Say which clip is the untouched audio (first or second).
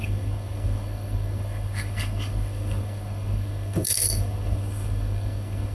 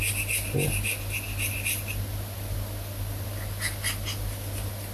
second